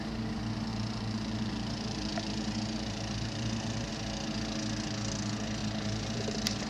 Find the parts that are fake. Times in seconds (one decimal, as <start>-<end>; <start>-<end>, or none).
0.7-3.9; 5.6-6.7

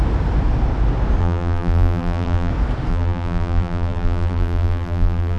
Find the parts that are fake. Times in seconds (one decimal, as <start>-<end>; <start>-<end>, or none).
1.2-2.5; 2.9-5.4

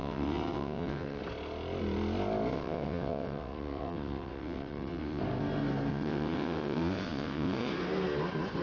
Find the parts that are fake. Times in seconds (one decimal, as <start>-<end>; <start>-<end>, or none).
0.0-1.2; 2.5-5.2; 5.9-7.7

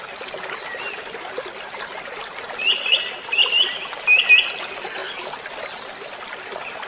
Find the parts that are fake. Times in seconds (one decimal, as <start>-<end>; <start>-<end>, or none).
none